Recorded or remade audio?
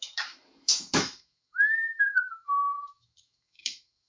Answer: remade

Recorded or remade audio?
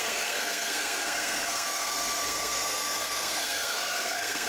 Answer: remade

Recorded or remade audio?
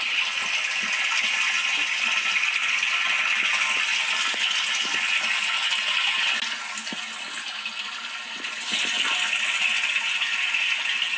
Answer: recorded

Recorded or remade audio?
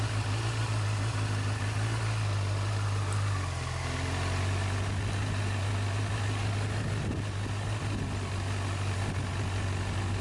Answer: recorded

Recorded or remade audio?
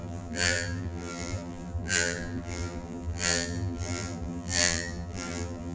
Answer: remade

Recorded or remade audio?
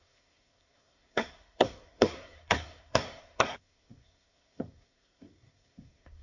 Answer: remade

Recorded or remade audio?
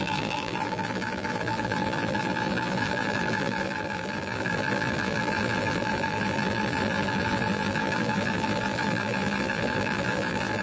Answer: remade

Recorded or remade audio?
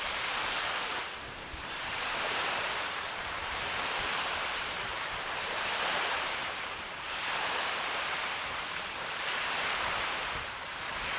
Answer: remade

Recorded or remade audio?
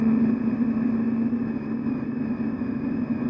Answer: recorded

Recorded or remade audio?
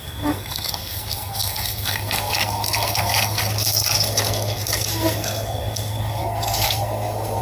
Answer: remade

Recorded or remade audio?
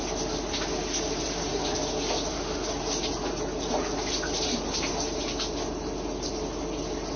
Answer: recorded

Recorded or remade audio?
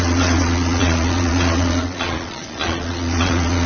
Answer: remade